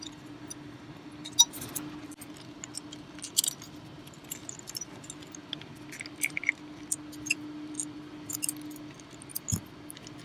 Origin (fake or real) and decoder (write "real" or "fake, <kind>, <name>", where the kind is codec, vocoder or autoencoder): real